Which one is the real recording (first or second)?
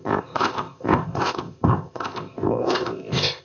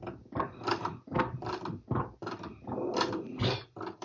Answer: second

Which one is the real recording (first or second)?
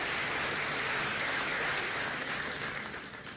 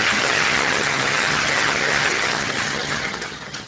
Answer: first